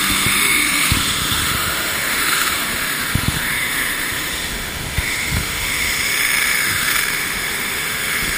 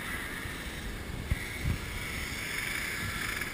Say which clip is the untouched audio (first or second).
second